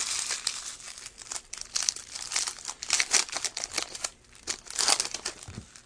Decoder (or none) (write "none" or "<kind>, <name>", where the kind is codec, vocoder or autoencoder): none